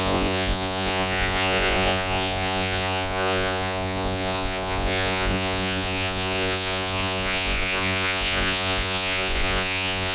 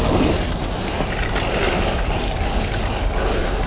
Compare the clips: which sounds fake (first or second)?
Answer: first